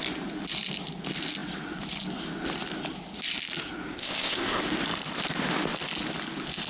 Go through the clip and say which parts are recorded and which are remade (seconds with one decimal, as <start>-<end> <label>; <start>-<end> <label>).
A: 0.0-4.0 recorded; 4.0-4.6 remade; 4.6-6.7 recorded